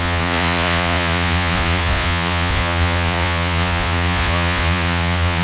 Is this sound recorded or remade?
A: remade